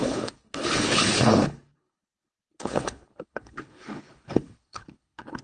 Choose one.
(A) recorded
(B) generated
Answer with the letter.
B